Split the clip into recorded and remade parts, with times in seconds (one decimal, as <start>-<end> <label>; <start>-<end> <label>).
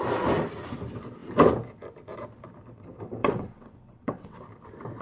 0.0-3.2 recorded; 3.2-4.4 remade; 4.4-5.0 recorded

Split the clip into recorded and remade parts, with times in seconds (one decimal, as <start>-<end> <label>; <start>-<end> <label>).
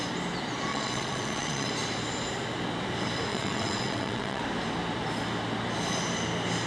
0.0-0.7 recorded; 0.7-1.7 remade; 1.7-3.3 recorded; 3.3-4.4 remade; 4.4-6.7 recorded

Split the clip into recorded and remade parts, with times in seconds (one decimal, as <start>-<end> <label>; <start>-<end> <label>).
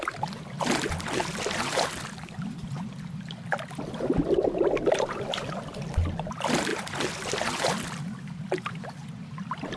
0.0-9.8 recorded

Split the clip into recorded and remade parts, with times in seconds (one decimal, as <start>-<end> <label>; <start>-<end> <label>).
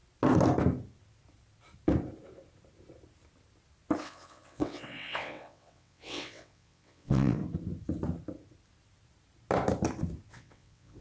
0.0-4.0 recorded; 4.0-7.4 remade; 7.4-10.3 recorded; 10.3-11.0 remade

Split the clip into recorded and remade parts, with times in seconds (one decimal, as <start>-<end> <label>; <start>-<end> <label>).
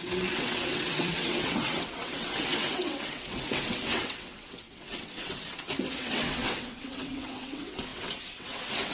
0.0-8.9 remade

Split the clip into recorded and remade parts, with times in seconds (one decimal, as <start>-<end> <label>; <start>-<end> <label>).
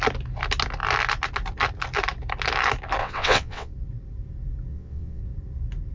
0.0-3.0 recorded; 3.0-3.7 remade; 3.7-4.7 recorded; 4.7-5.2 remade; 5.2-5.9 recorded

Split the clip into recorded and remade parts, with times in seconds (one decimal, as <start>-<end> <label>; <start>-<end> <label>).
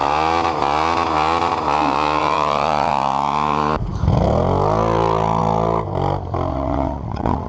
0.0-2.2 recorded; 2.2-2.9 remade; 2.9-6.5 recorded; 6.5-7.5 remade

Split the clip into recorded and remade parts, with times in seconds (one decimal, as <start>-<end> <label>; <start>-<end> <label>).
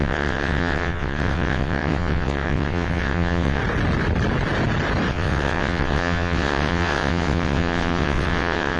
0.0-3.6 remade; 3.6-5.1 recorded; 5.1-8.8 remade